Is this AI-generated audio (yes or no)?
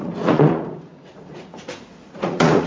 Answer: yes